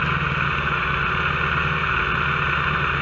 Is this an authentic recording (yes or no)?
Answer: yes